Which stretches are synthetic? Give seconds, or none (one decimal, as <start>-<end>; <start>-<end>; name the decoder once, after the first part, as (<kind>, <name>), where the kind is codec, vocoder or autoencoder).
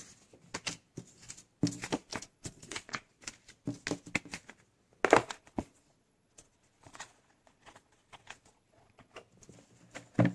2.1-3.1 (vocoder, Vocos); 5.2-9.1